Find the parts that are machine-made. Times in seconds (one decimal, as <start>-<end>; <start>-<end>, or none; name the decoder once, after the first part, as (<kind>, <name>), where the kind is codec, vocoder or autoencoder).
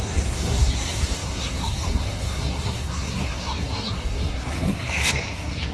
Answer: 0.0-5.7 (codec, SNAC)